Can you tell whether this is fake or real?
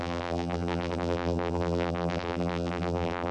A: fake